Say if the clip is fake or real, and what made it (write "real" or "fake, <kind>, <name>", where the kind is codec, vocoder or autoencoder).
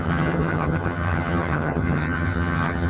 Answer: fake, vocoder, HiFi-GAN